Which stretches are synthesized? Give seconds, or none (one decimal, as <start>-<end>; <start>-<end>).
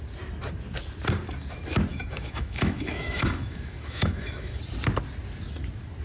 1.9-4.6